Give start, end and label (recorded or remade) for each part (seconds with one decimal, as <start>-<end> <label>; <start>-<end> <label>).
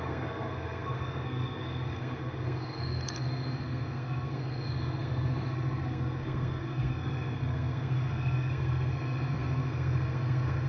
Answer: 0.0-10.7 remade